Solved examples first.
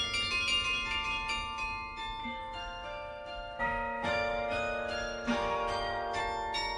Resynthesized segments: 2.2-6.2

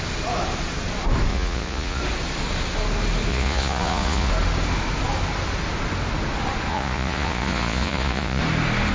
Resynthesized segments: 1.3-2.0; 3.3-4.3; 6.7-8.4

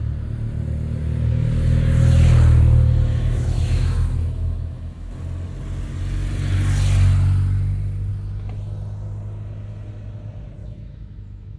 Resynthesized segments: 3.1-5.1; 10.6-11.6

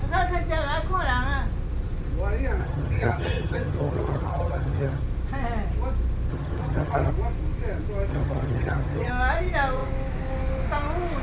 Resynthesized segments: 2.6-5.0; 6.3-7.1; 8.1-9.1

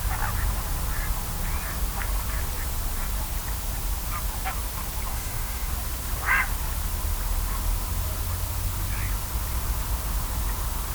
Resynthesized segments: 5.1-5.7

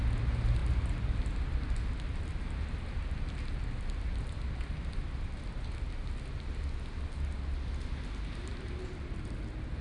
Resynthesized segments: none

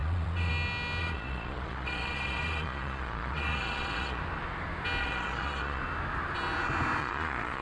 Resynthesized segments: 0.0-0.5; 1.0-4.2; 5.0-5.8; 7.0-7.6